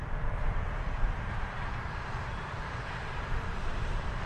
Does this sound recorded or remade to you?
remade